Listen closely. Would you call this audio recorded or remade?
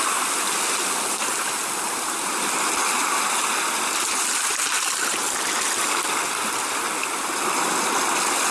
recorded